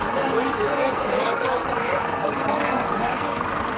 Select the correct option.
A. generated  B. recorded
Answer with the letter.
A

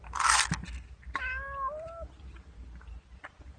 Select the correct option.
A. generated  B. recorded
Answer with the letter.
B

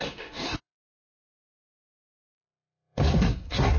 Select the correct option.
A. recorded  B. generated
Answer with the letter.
B